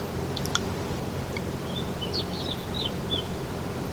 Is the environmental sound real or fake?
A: real